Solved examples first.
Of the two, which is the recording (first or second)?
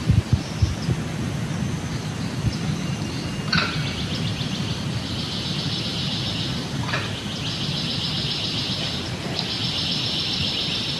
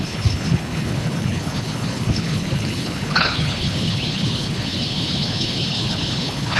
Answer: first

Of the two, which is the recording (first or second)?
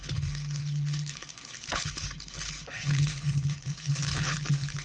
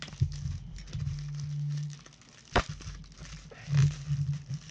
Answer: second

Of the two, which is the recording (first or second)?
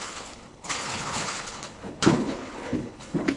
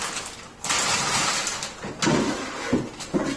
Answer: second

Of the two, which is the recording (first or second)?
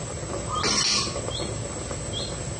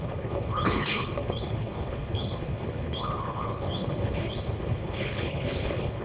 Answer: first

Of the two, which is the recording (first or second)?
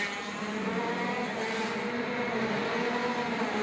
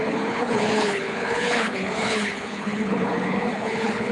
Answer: first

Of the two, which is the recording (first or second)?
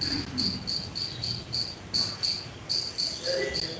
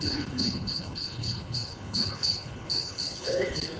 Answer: first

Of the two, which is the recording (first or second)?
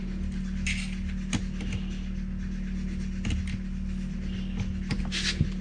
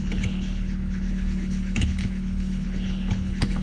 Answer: first